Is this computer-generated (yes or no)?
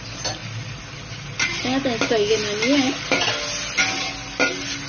no